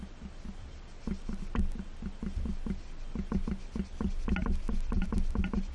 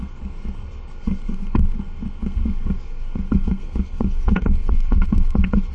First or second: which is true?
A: first